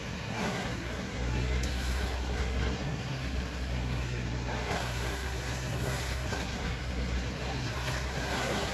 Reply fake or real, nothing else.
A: fake